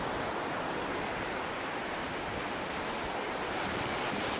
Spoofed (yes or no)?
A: no